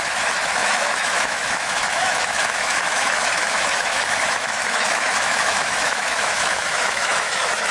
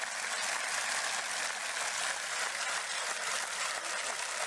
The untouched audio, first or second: second